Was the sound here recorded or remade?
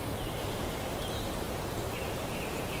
remade